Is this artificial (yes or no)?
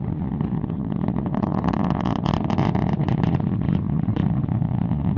yes